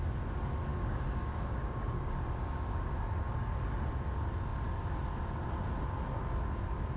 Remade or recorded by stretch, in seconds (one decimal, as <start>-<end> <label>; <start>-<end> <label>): 0.0-0.7 recorded; 0.7-3.8 remade; 3.8-7.0 recorded